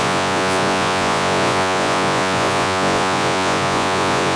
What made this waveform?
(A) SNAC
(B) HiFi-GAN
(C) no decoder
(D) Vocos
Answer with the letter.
D